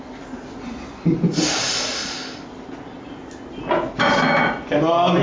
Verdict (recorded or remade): recorded